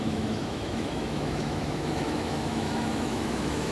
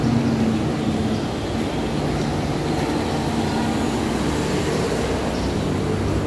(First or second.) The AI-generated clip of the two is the first